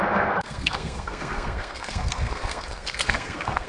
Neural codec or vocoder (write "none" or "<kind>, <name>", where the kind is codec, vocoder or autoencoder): codec, SNAC